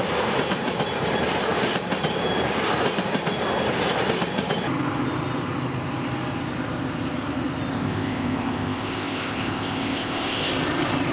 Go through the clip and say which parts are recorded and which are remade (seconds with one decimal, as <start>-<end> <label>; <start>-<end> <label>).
0.0-7.7 recorded; 7.7-10.5 remade; 10.5-11.1 recorded